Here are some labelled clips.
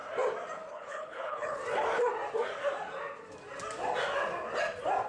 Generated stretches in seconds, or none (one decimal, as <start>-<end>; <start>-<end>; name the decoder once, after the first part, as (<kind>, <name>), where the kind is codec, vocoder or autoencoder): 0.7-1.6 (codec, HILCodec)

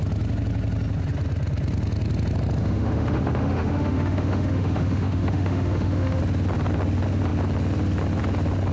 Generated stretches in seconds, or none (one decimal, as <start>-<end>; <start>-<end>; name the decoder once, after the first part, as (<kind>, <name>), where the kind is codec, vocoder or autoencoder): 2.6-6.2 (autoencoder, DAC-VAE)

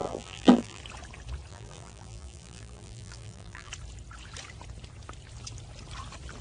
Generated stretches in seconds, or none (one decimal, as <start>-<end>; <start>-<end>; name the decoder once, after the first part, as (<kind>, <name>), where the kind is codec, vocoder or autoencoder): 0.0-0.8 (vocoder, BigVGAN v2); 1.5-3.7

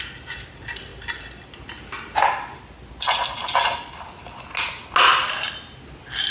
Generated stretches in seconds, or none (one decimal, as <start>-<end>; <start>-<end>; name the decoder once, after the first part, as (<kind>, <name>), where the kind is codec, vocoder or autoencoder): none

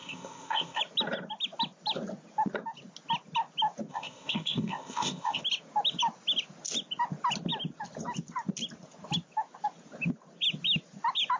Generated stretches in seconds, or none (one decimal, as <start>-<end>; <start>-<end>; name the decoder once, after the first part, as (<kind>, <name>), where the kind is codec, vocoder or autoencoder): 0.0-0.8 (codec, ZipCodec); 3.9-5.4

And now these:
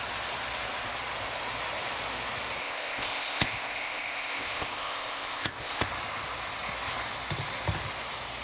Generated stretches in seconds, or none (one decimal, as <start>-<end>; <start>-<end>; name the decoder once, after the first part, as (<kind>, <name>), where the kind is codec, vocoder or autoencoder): 2.6-5.9 (codec, ZipCodec)

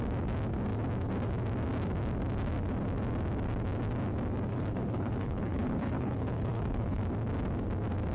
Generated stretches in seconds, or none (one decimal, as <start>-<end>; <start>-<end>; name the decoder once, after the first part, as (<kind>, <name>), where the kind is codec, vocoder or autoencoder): 4.5-7.0 (codec, HILCodec)

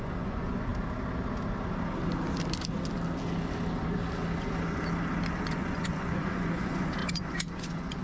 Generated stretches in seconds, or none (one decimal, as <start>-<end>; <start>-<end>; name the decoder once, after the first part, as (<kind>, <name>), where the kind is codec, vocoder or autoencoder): 0.0-0.7 (vocoder, Vocos); 5.5-8.0